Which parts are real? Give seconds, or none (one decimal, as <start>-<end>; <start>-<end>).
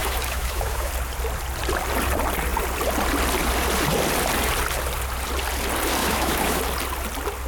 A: 0.9-6.0; 6.6-7.5